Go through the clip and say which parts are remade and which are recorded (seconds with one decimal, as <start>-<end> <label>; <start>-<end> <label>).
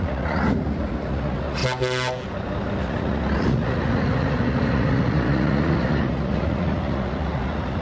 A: 0.0-1.6 remade; 1.6-2.8 recorded; 2.8-7.8 remade